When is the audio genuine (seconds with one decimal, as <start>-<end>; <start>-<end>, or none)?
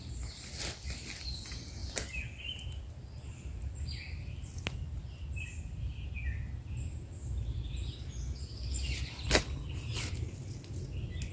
0.0-11.3